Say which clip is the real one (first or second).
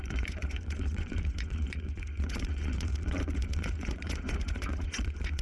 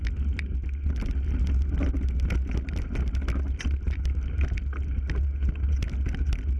second